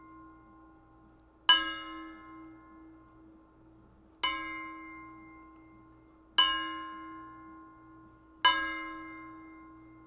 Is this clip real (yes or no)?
yes